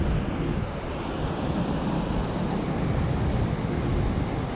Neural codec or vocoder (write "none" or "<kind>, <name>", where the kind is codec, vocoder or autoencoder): none